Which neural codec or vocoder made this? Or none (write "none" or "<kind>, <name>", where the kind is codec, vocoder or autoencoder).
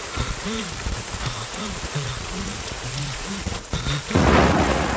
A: vocoder, Vocos